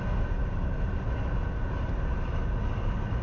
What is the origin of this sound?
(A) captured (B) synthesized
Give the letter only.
A